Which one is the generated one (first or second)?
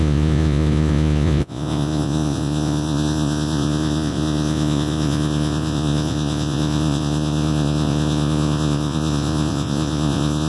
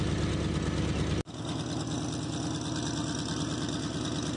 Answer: first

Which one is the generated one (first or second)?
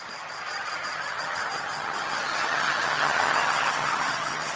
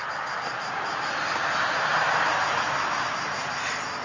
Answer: first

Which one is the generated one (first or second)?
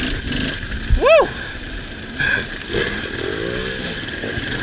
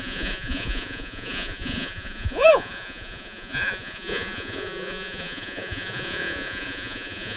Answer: second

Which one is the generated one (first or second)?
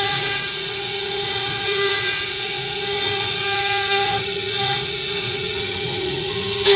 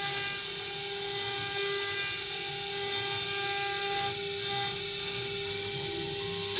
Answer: first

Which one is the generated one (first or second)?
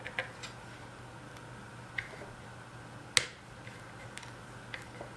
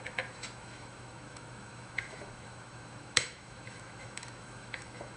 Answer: second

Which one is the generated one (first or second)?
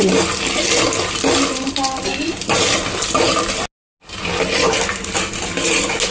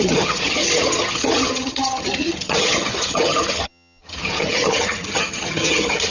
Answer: second